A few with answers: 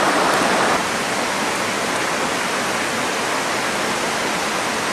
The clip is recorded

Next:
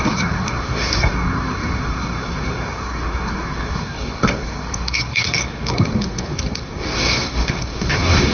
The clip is remade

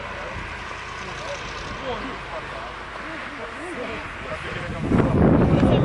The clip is recorded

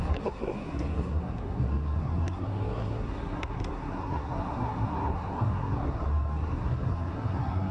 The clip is remade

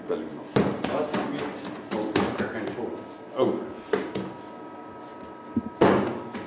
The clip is recorded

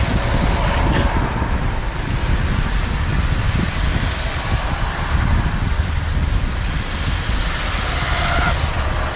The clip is recorded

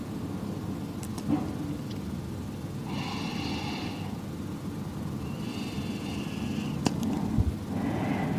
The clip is recorded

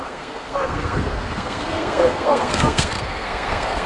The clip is remade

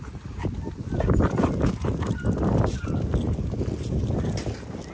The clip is recorded